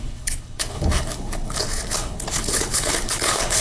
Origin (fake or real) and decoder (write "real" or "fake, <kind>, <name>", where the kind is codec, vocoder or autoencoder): fake, codec, HILCodec